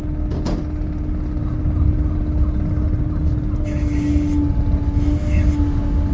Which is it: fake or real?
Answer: real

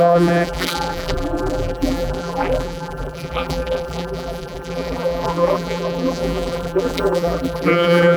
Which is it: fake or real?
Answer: fake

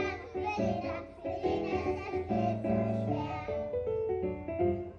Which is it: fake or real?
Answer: real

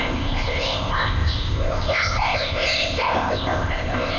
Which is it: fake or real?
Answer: fake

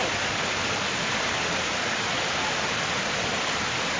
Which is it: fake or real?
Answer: fake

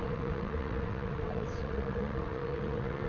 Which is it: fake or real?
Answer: fake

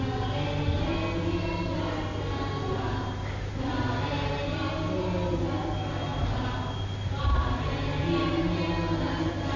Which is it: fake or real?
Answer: real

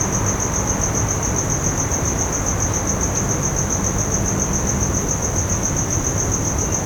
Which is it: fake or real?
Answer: real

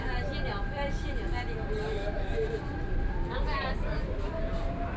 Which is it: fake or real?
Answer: real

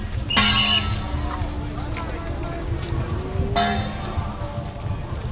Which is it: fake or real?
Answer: real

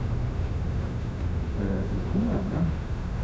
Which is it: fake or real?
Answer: fake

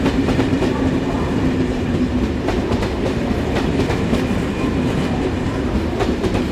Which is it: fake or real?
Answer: fake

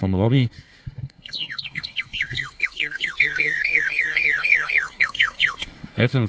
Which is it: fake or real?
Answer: fake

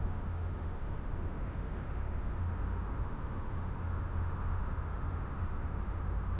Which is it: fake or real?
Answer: fake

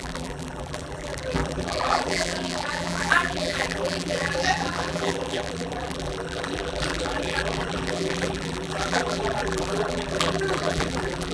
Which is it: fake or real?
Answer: fake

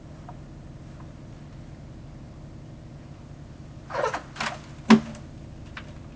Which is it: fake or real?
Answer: real